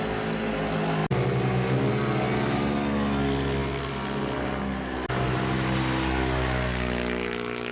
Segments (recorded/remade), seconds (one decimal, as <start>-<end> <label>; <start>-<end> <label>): 0.0-7.7 recorded